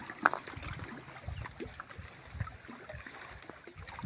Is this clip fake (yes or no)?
no